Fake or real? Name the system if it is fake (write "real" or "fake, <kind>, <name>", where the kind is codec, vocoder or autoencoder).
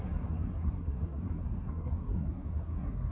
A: fake, codec, SNAC